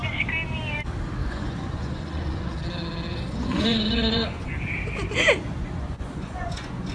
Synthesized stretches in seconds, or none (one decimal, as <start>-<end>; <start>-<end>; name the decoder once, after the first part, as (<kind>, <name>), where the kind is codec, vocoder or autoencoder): 1.2-2.5 (vocoder, Vocos); 3.1-4.5; 5.6-6.9

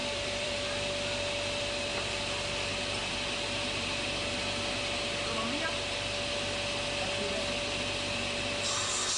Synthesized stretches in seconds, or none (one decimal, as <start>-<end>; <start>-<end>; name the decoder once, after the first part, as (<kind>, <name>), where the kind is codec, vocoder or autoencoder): 0.0-2.7 (vocoder, BigVGAN v2)

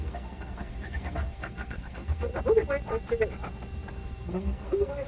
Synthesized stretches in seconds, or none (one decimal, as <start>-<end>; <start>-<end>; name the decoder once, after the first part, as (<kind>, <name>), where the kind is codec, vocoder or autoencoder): 0.0-2.3 (codec, SNAC); 3.9-5.1

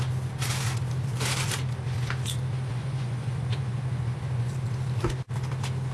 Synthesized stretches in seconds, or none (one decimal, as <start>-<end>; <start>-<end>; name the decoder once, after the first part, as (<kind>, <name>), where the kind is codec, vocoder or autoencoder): 2.7-4.5 (vocoder, Vocos)

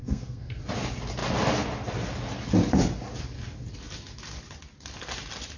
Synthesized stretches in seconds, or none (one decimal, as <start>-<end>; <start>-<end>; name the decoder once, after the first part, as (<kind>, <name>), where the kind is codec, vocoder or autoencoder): 0.0-0.6 (codec, SNAC)